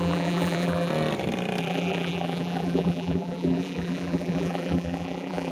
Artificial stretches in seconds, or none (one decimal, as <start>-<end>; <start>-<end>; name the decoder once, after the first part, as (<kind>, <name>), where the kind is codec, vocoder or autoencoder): 0.0-0.9 (vocoder, BigVGAN v2); 1.6-5.5